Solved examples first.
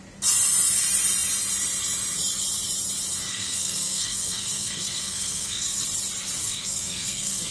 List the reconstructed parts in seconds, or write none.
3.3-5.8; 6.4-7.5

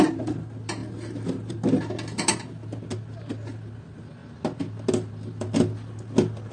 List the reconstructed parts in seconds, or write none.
none

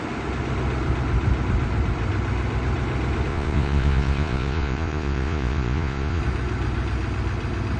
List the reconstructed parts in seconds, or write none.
3.3-6.2

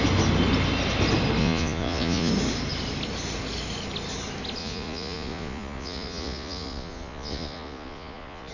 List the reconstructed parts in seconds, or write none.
1.4-2.3; 4.6-8.5